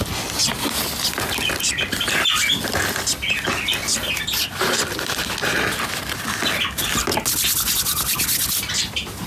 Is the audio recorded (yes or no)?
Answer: yes